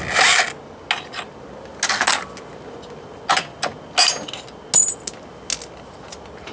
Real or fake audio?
real